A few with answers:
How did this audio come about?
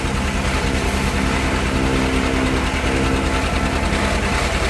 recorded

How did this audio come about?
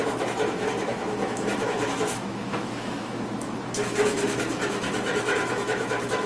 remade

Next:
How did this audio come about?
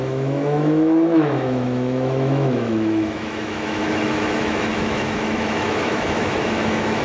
remade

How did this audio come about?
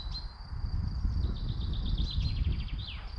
recorded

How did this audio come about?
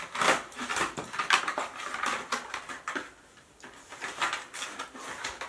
recorded